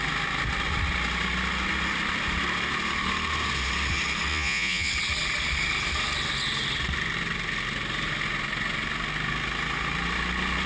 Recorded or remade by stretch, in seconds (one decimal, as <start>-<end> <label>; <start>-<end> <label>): 0.0-4.3 recorded; 4.3-4.9 remade; 4.9-10.7 recorded